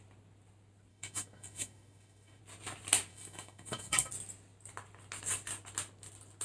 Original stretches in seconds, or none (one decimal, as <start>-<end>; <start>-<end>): 0.0-0.9; 2.4-3.1; 4.1-6.4

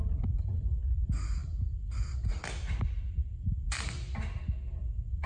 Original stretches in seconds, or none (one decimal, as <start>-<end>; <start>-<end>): 0.0-5.3

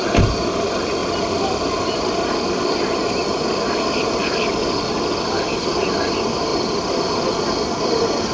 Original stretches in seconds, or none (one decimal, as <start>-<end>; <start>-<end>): 0.0-8.3

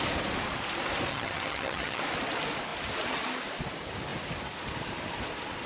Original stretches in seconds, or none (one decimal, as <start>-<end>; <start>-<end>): 0.0-1.1; 2.0-5.7

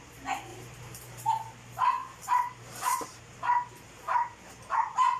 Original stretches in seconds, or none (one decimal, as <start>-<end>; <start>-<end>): 0.0-0.5; 1.3-2.0; 4.4-5.2